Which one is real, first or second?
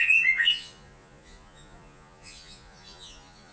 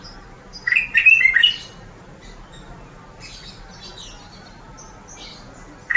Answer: second